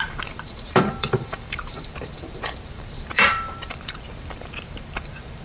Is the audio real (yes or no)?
no